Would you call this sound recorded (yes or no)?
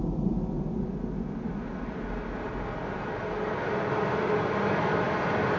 yes